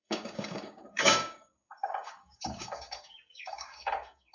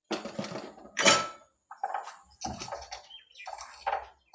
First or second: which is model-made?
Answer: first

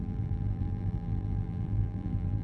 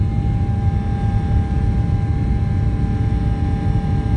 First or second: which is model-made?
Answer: first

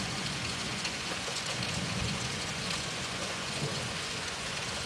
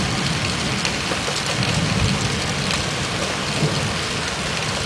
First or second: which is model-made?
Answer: first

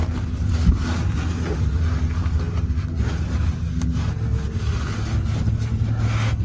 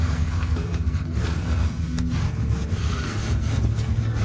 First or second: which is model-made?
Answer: second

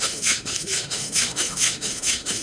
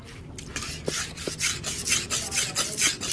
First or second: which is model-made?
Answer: first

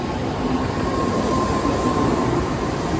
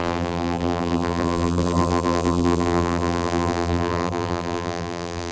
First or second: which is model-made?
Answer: second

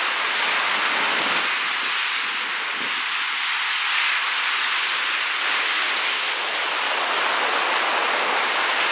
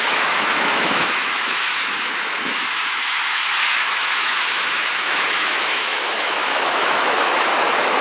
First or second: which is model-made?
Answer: second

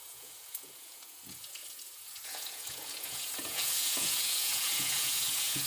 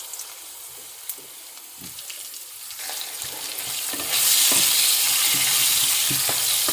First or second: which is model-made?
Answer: first